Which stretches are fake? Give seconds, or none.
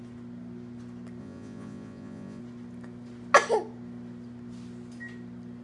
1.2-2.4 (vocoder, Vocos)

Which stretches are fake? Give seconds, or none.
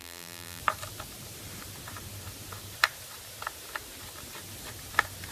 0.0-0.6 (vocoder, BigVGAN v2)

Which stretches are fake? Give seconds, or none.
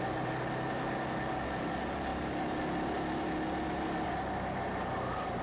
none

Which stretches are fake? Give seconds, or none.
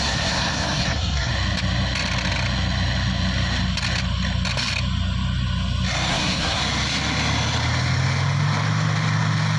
0.0-1.3 (codec, SNAC); 6.1-6.6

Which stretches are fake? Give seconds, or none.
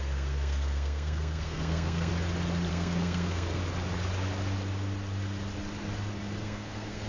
0.0-2.1 (codec, SNAC); 2.7-3.6; 6.4-7.1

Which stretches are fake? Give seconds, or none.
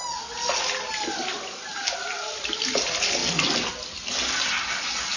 none